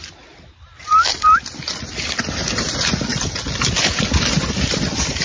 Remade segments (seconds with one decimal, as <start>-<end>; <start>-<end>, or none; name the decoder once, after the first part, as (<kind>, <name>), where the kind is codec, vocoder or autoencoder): none